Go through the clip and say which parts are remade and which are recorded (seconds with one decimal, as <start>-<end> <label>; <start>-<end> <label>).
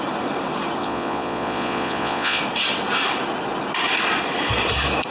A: 0.0-0.8 recorded; 0.8-2.4 remade; 2.4-5.1 recorded